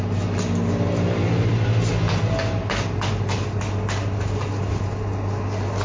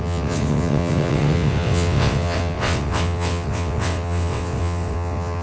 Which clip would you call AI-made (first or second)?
second